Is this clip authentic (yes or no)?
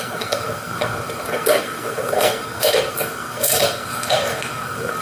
no